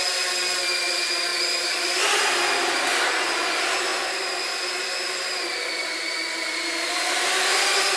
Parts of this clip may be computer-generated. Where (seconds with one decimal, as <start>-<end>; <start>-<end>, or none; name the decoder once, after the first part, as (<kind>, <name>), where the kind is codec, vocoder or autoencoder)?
none